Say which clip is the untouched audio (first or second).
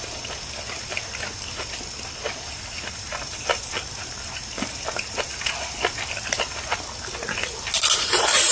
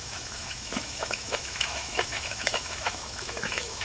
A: first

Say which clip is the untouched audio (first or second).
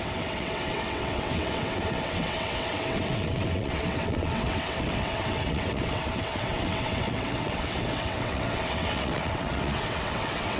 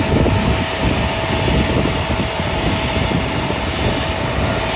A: second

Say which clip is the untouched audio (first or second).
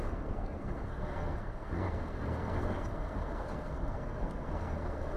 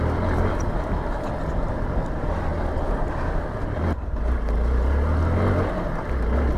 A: second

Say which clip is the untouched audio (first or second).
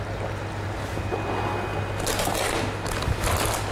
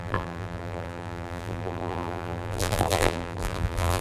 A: first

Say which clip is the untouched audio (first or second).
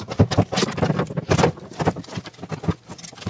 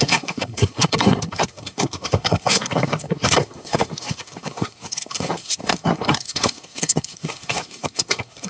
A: first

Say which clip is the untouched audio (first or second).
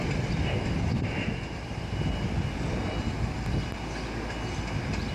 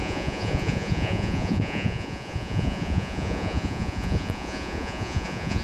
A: first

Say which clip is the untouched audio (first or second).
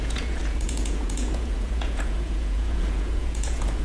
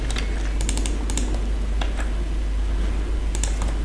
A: second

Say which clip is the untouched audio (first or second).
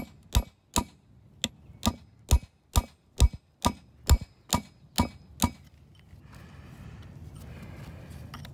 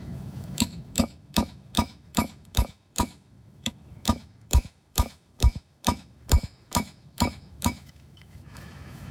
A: first